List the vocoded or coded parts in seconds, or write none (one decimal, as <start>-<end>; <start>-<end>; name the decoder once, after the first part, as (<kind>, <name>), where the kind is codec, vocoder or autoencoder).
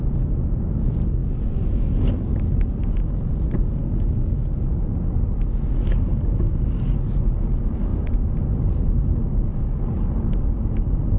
7.9-9.1 (vocoder, BigVGAN v2)